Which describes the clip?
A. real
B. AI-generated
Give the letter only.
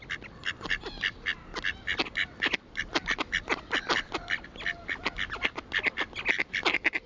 A